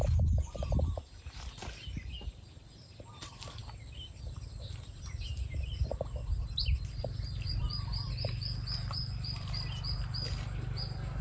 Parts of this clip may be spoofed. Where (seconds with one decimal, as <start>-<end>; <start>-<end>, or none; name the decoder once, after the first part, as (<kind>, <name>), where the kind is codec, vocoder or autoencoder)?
none